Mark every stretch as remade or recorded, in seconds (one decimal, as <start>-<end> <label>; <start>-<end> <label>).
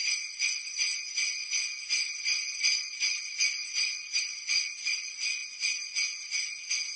0.0-4.2 remade; 4.2-7.0 recorded